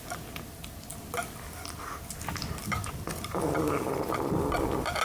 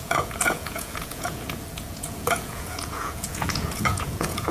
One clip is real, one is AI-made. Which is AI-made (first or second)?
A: second